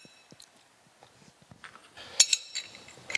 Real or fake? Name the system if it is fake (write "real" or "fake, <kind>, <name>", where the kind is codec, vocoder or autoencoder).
real